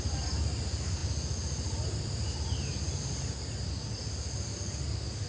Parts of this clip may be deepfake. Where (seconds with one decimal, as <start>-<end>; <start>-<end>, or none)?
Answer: none